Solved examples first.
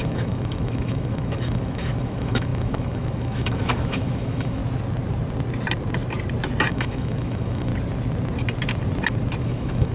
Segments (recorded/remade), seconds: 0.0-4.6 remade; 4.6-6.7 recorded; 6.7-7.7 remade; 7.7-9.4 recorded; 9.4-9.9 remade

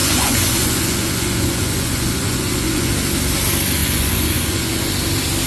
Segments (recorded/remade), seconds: 0.0-2.9 remade; 2.9-3.8 recorded; 3.8-4.9 remade; 4.9-5.5 recorded

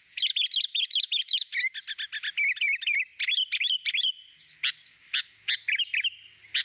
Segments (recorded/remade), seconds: 0.0-0.7 recorded; 0.7-1.6 remade; 1.6-6.6 recorded

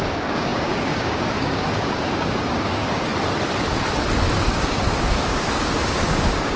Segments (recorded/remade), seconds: 0.0-3.1 remade; 3.1-4.3 recorded; 4.3-6.6 remade